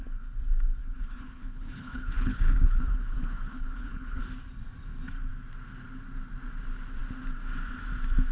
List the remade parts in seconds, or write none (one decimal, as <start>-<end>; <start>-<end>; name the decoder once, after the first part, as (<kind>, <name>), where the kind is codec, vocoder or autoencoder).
0.8-4.2 (codec, HILCodec)